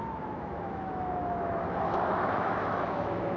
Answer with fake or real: fake